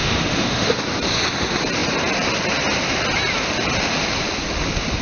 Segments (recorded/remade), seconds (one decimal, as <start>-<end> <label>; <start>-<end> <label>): 0.0-0.7 remade; 0.7-5.0 recorded